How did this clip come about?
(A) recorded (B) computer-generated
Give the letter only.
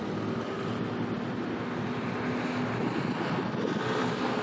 A